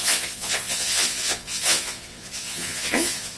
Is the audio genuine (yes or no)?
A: no